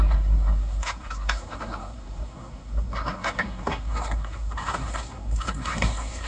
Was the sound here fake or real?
fake